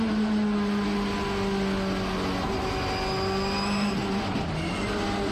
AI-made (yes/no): no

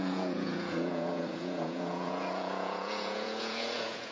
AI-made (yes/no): yes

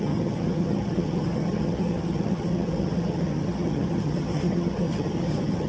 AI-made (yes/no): yes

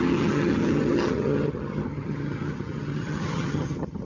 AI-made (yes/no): yes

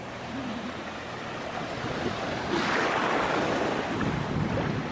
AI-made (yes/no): no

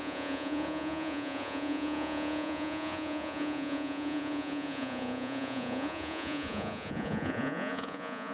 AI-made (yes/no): yes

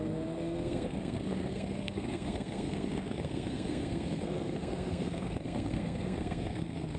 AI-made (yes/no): yes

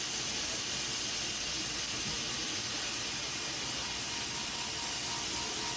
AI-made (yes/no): no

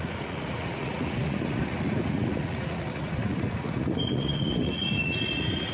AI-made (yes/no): yes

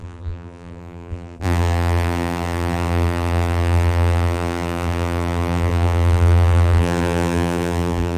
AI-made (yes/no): yes